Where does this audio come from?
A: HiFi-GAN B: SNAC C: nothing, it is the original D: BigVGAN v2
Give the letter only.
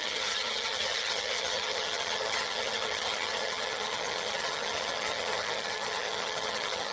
A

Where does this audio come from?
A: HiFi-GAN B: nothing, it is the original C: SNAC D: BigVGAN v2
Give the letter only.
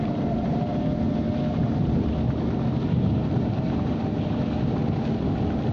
B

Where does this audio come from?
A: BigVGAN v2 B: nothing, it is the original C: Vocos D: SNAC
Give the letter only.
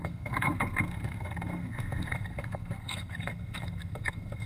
D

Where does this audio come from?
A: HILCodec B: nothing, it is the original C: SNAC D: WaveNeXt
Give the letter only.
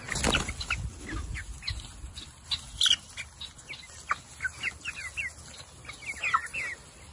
B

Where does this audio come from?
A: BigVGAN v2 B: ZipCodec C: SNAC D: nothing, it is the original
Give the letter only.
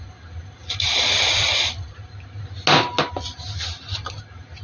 D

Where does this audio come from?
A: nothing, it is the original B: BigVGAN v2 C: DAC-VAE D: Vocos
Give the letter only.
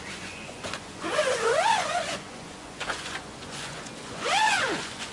D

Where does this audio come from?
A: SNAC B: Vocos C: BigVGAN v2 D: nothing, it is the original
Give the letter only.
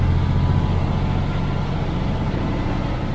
D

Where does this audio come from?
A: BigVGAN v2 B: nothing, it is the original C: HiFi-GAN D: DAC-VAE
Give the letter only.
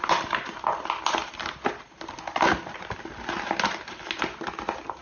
B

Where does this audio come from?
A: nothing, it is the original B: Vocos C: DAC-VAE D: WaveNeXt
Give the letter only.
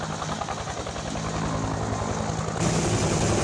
A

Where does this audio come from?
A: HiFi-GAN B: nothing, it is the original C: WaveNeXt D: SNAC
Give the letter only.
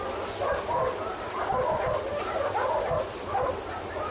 B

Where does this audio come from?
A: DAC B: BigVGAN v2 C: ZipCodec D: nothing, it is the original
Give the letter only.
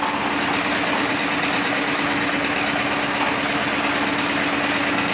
D